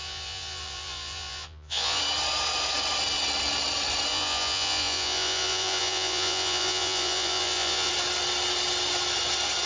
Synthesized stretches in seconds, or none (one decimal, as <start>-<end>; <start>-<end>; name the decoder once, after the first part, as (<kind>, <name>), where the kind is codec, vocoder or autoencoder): 0.0-2.0 (vocoder, Vocos); 4.1-7.9